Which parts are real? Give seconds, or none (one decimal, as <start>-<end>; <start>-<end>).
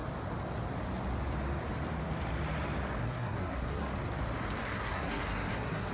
0.0-3.0; 3.9-4.6